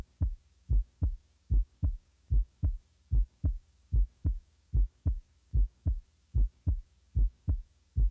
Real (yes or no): no